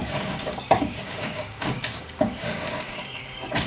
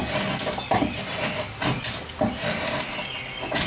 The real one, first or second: second